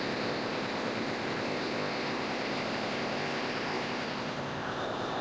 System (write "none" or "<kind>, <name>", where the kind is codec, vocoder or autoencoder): codec, ZipCodec